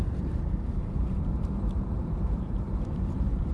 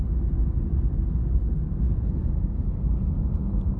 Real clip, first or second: second